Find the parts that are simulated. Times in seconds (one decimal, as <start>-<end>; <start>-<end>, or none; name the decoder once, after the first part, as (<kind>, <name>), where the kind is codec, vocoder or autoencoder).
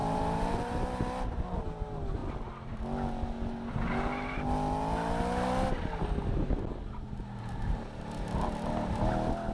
0.0-0.7 (vocoder, BigVGAN v2)